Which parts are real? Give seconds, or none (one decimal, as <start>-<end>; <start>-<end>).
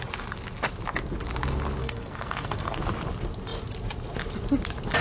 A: 0.0-1.8; 2.8-5.0